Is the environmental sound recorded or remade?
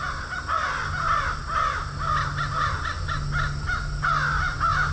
recorded